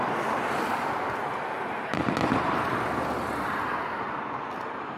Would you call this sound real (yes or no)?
yes